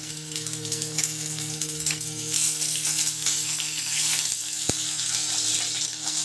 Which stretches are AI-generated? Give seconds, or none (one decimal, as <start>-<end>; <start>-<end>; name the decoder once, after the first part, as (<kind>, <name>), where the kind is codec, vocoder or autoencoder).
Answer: 0.0-5.3 (codec, SNAC); 5.8-6.2